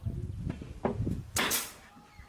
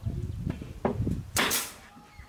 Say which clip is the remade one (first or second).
second